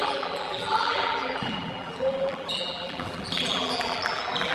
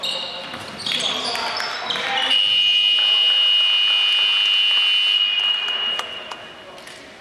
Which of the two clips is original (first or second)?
second